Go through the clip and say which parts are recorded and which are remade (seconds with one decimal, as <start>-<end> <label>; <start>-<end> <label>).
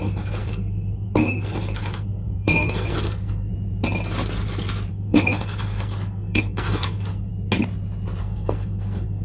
0.0-3.5 remade; 3.5-4.9 recorded; 4.9-7.3 remade; 7.3-8.2 recorded; 8.2-9.2 remade